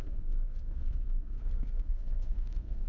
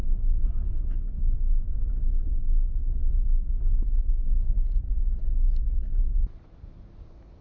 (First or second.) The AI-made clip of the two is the first